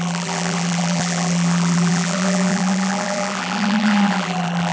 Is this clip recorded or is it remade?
remade